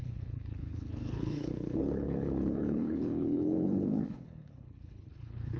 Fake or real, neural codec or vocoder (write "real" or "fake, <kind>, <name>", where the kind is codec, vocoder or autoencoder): fake, codec, HILCodec